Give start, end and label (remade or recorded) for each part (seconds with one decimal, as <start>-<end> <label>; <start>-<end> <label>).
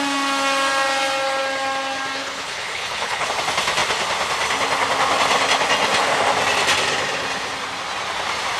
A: 0.0-2.2 recorded; 2.2-3.3 remade; 3.3-8.6 recorded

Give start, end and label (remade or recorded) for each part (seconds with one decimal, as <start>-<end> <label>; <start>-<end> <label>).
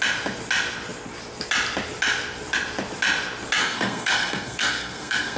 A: 0.0-3.6 recorded; 3.6-5.4 remade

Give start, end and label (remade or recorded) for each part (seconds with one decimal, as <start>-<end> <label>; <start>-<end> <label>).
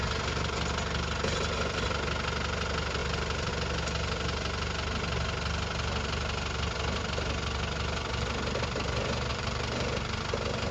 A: 0.0-3.0 recorded; 3.0-3.5 remade; 3.5-9.3 recorded; 9.3-10.2 remade; 10.2-10.7 recorded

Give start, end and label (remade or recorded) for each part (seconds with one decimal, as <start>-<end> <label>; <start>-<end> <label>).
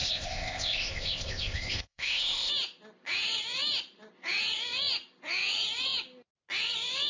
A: 0.0-2.5 remade; 2.5-7.1 recorded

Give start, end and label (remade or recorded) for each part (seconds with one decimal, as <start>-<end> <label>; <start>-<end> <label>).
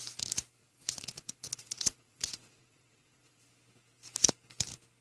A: 0.0-0.6 recorded; 0.6-3.4 remade; 3.4-5.0 recorded